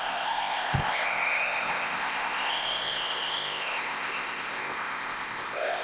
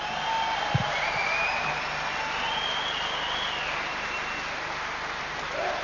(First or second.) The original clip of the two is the second